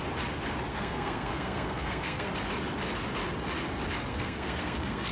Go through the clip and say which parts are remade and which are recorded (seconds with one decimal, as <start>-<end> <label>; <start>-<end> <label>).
0.0-0.7 recorded; 0.7-2.3 remade; 2.3-4.1 recorded; 4.1-5.1 remade